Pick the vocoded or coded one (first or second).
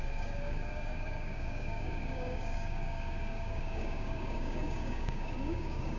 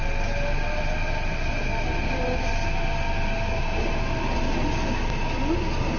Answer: first